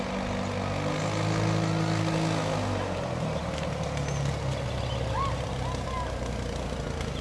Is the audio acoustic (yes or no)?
yes